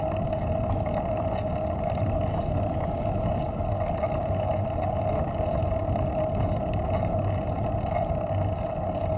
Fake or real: real